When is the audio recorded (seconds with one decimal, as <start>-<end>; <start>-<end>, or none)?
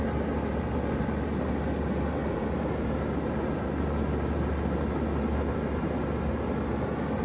0.0-7.2